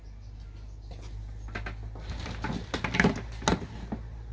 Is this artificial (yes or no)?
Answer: no